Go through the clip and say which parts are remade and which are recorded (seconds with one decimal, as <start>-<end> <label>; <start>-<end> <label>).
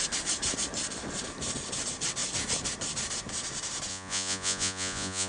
0.0-3.9 recorded; 3.9-5.3 remade